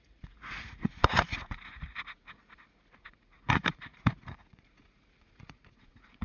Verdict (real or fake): fake